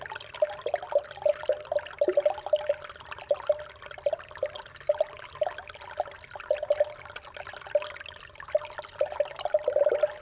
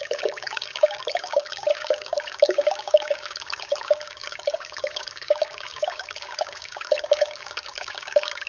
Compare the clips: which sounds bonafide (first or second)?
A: first